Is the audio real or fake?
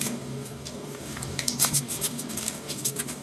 fake